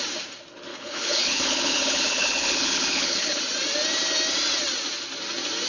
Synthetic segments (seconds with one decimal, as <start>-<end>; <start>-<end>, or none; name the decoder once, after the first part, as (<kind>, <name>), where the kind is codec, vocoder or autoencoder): 0.7-3.4 (codec, HILCodec)